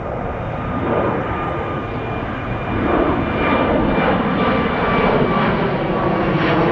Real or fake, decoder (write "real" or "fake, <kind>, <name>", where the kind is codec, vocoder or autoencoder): real